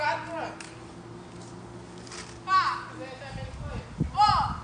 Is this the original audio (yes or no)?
yes